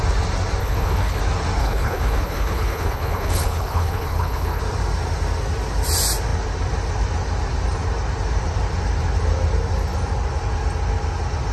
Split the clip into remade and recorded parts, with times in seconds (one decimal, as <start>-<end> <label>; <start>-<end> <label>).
0.0-0.6 recorded; 0.6-1.2 remade; 1.2-1.6 recorded; 1.6-4.6 remade; 4.6-11.5 recorded